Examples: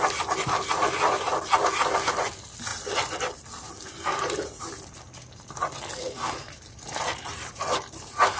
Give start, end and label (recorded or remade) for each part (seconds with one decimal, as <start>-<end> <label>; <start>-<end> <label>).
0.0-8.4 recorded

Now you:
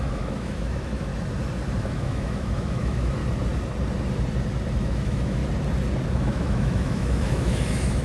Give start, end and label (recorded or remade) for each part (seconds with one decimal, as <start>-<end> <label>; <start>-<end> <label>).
0.0-1.1 remade; 1.1-1.8 recorded; 1.8-3.2 remade; 3.2-4.8 recorded; 4.8-5.4 remade; 5.4-6.1 recorded; 6.1-8.0 remade

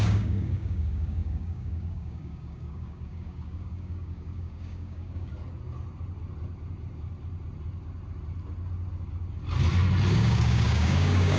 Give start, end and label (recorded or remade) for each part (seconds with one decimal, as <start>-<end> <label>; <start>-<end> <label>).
0.0-5.3 remade; 5.3-10.1 recorded; 10.1-11.4 remade